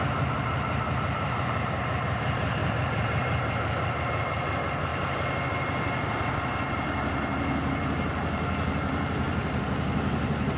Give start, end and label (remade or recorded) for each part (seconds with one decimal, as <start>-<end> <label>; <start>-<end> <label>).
0.0-4.9 remade; 4.9-5.5 recorded; 5.5-10.6 remade